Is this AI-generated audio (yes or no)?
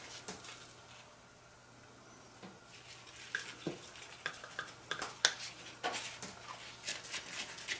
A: no